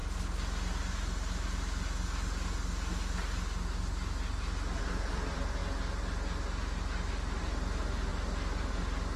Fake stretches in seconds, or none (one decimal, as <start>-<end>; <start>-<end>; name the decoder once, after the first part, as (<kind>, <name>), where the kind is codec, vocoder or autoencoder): 4.8-5.6 (vocoder, BigVGAN v2); 7.4-8.1